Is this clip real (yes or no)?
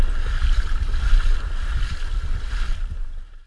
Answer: yes